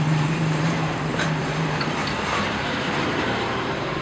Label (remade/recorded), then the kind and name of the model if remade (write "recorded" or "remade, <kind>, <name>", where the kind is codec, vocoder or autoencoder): remade, vocoder, BigVGAN v2